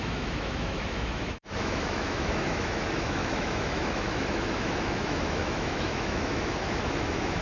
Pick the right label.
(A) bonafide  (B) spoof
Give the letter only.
B